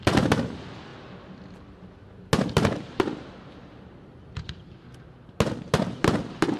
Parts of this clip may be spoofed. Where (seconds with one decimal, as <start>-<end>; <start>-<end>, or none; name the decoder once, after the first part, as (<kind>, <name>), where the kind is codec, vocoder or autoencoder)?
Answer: none

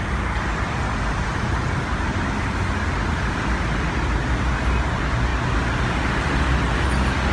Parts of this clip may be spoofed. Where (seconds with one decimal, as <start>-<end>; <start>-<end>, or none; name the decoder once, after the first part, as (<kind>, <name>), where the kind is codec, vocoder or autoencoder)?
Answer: none

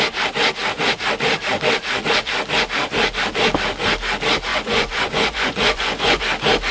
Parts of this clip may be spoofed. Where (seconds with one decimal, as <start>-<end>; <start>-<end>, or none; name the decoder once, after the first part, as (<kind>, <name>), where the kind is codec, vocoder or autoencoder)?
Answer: 4.5-6.2 (vocoder, Vocos)

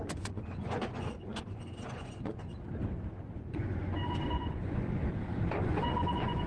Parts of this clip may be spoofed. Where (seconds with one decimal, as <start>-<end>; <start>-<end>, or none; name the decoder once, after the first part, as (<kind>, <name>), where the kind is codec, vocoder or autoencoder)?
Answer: 0.0-2.5 (vocoder, Vocos); 3.4-5.0; 5.6-6.5

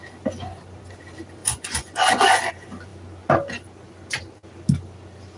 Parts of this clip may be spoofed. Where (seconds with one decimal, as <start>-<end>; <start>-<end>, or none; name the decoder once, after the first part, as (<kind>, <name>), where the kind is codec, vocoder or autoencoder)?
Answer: 1.4-2.5 (vocoder, Vocos)

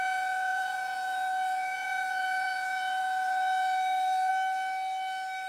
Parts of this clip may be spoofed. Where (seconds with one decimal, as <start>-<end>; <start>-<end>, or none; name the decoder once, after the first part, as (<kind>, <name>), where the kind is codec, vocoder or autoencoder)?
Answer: 0.0-4.3 (vocoder, Vocos)